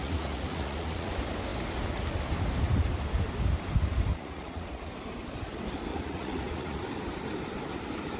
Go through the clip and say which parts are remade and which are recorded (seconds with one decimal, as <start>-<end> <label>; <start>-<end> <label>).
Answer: 0.0-1.1 remade; 1.1-4.1 recorded; 4.1-4.9 remade; 4.9-5.9 recorded; 5.9-6.8 remade; 6.8-8.2 recorded